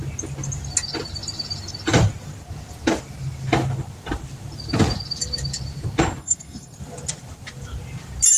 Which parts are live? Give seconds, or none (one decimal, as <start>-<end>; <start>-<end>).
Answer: 0.0-6.2; 6.8-8.4